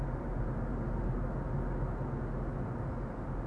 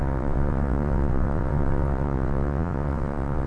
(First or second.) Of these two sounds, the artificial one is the second